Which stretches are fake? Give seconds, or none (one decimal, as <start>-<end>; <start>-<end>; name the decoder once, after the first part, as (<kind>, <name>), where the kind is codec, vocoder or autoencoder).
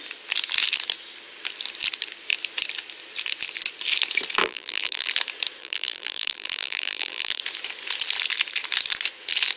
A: 4.4-5.1 (vocoder, BigVGAN v2); 5.6-7.4